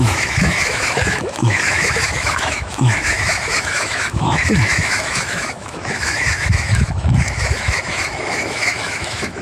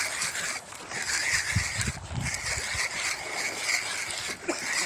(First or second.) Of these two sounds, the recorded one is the second